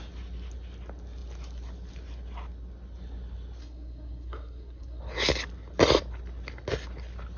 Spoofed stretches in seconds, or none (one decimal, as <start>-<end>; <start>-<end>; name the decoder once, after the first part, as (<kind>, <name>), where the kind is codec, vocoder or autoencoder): 3.6-5.0 (codec, SNAC)